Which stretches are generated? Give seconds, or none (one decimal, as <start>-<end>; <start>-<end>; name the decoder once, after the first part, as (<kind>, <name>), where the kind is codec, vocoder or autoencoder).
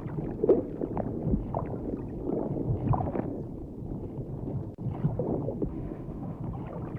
5.7-6.4 (autoencoder, DAC-VAE)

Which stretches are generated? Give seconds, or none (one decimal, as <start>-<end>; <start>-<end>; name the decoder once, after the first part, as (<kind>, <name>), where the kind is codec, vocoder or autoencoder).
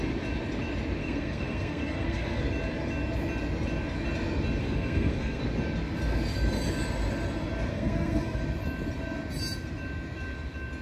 1.0-2.4 (codec, SNAC); 4.6-5.4; 7.7-8.4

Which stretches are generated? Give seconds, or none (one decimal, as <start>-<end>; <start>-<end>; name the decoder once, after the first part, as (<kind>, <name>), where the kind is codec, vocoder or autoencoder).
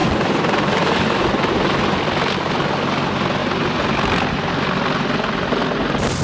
0.0-1.5 (vocoder, BigVGAN v2)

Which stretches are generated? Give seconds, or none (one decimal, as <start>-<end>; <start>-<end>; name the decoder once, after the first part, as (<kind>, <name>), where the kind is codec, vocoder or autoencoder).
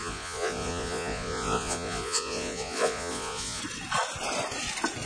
0.0-3.6 (vocoder, Vocos)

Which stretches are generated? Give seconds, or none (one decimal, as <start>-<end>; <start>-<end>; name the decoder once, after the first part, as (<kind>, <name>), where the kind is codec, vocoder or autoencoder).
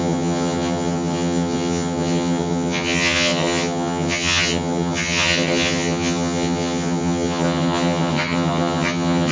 0.0-9.3 (vocoder, HiFi-GAN)